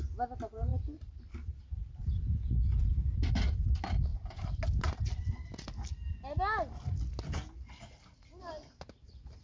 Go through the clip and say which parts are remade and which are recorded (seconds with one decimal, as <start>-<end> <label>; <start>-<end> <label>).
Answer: 0.0-0.7 recorded; 0.7-3.3 remade; 3.3-9.4 recorded